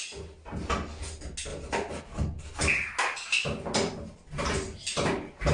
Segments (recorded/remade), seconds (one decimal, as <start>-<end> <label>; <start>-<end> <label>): 0.0-5.5 recorded